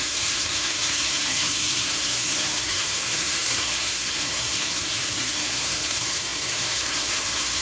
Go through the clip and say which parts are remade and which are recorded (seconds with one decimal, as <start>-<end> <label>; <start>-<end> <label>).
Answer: 0.0-7.6 remade